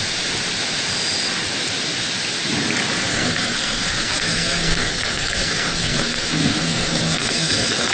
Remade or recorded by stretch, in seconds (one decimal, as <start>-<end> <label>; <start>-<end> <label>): 0.0-3.1 recorded; 3.1-7.9 remade